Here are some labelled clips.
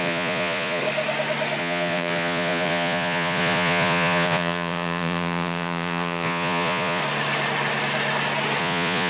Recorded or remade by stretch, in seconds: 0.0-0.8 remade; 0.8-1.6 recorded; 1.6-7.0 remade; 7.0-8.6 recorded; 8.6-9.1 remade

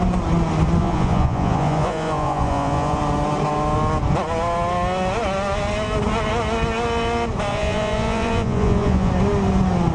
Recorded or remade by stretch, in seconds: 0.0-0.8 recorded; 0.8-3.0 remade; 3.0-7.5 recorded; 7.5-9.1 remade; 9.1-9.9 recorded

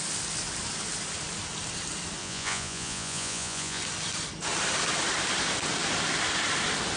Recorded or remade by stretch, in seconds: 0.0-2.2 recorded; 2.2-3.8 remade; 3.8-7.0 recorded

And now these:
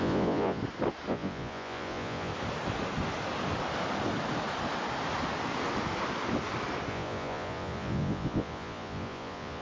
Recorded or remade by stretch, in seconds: 0.0-0.6 remade; 0.6-1.1 recorded; 1.1-2.3 remade; 2.3-6.9 recorded; 6.9-9.6 remade

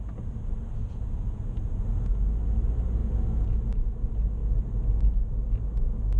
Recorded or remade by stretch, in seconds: 0.0-0.8 recorded; 0.8-1.8 remade; 1.8-3.0 recorded; 3.0-3.6 remade; 3.6-6.2 recorded